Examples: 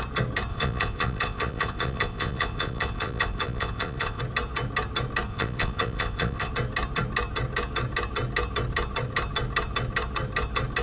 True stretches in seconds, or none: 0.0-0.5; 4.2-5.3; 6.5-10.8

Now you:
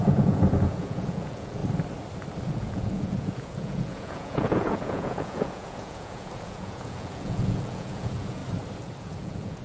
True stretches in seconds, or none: 1.6-2.5; 8.4-9.0